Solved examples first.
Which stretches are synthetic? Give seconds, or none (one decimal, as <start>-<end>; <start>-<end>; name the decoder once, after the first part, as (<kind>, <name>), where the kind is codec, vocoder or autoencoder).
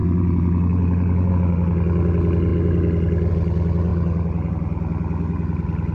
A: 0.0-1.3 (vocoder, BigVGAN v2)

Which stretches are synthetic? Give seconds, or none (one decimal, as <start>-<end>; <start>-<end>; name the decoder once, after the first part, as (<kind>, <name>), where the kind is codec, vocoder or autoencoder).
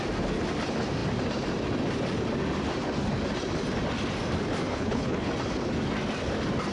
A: 4.7-5.3 (codec, HILCodec)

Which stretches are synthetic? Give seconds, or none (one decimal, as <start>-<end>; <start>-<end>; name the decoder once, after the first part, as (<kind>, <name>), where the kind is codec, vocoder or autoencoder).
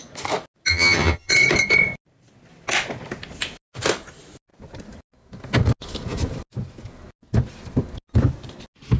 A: 0.7-1.3 (vocoder, HiFi-GAN)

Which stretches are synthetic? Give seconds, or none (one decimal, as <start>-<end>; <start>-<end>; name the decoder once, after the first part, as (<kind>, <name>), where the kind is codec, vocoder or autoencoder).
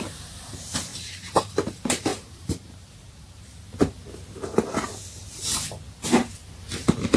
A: 0.9-1.7 (vocoder, BigVGAN v2); 2.1-3.7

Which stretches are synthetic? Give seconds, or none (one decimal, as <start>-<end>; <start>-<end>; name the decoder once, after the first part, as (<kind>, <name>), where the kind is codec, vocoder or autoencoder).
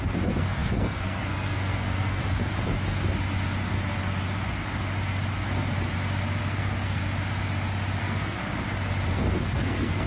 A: 0.0-2.2 (codec, SNAC); 6.4-7.0; 8.0-8.4; 9.1-10.1